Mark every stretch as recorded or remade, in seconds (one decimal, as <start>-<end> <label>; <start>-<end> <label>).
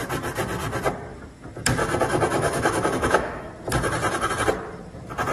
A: 0.0-1.8 recorded; 1.8-3.5 remade; 3.5-5.3 recorded